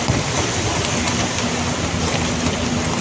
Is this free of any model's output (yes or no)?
yes